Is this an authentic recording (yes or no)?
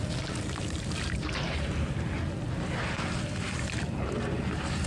yes